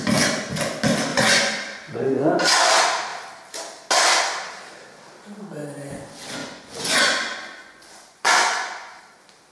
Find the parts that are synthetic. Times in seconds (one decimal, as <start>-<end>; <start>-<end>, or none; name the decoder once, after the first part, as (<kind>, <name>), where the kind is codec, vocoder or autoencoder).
1.1-2.4 (vocoder, Vocos); 6.4-9.0